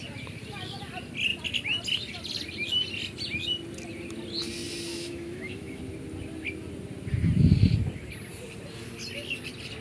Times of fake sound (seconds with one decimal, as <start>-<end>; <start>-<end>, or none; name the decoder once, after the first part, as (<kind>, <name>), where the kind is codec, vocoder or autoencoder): 4.9-5.8 (autoencoder, DAC-VAE)

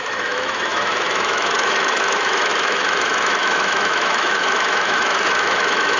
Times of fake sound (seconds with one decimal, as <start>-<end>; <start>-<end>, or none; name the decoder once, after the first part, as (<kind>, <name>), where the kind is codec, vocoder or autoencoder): 0.0-6.0 (autoencoder, DAC-VAE)

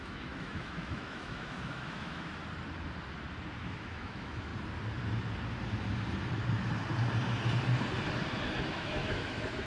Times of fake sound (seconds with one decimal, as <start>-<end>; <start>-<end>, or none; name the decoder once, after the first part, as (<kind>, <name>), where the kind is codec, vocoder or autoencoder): 0.0-2.4 (autoencoder, DAC-VAE); 3.6-4.5; 8.7-9.7

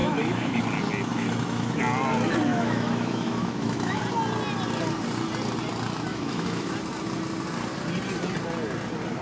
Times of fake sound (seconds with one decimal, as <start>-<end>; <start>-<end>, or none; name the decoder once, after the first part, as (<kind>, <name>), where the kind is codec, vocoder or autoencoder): 0.0-0.6 (autoencoder, DAC-VAE); 1.1-1.8; 2.5-4.0; 6.1-6.7